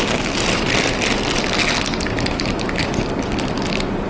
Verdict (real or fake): real